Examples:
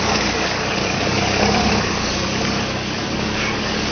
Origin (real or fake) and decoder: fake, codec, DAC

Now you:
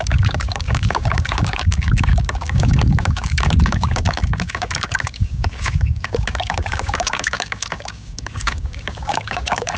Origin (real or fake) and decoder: fake, codec, DAC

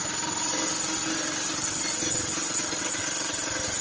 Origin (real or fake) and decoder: real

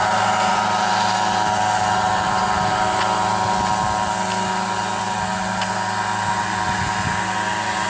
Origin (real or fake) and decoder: real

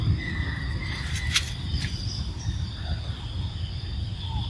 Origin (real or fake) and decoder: real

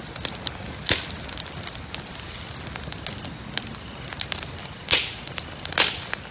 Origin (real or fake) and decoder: real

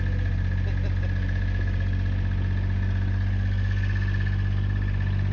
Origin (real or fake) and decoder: real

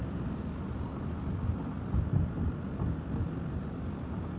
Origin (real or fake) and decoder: real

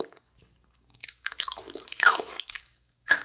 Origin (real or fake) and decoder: fake, codec, DAC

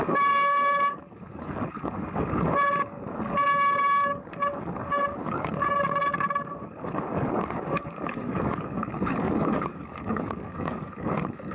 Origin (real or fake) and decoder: fake, codec, DAC